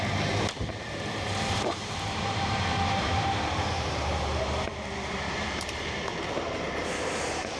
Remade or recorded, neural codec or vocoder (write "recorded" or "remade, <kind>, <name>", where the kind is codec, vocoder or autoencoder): remade, vocoder, BigVGAN v2